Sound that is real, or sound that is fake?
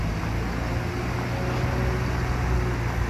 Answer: real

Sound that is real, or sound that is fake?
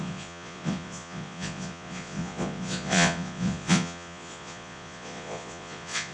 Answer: fake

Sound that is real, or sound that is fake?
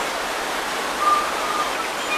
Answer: real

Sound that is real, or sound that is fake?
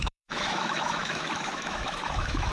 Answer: fake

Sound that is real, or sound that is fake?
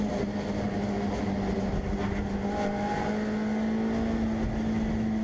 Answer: real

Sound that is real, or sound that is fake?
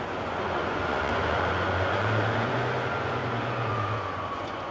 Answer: fake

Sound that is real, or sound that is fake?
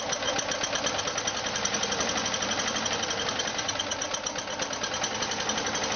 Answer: real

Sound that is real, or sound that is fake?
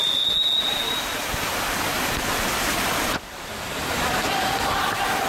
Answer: real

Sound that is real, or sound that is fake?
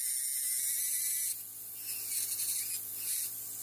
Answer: real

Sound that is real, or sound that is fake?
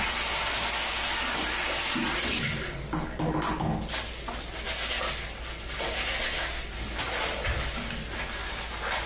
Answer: real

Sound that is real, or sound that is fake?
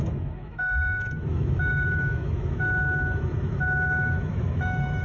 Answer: fake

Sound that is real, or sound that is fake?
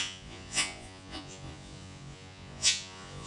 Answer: fake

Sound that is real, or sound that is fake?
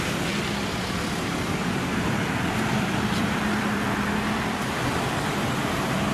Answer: fake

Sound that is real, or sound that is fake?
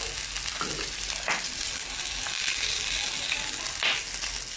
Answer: real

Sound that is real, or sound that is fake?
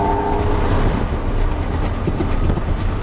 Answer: real